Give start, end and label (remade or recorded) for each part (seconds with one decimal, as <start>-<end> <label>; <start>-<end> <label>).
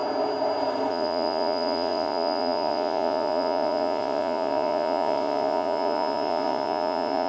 0.0-0.9 recorded; 0.9-7.3 remade